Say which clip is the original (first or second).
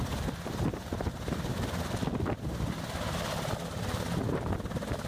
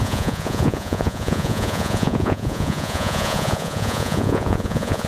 first